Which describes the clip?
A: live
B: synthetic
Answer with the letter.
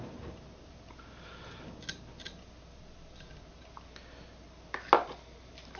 A